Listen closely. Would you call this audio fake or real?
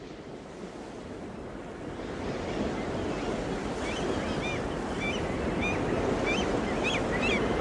real